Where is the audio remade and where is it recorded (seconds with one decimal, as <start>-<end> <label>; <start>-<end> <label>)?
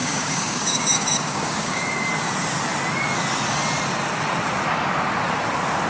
0.0-1.8 remade; 1.8-5.9 recorded